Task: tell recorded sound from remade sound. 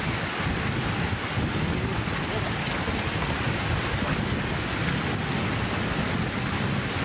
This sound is recorded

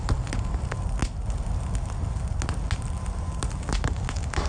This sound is recorded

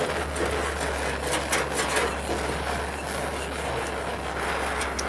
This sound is recorded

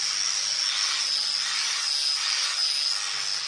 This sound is recorded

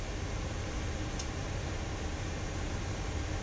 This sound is recorded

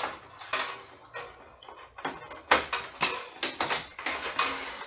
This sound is recorded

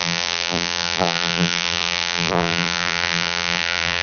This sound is remade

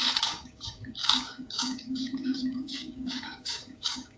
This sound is remade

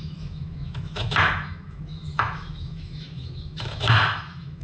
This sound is remade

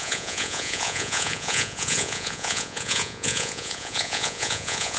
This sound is remade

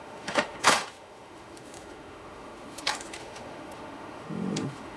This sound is remade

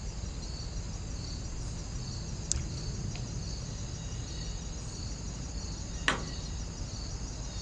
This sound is recorded